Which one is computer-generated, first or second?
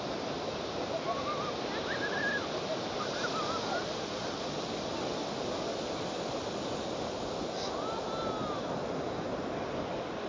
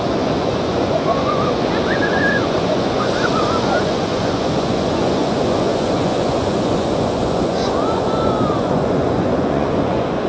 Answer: second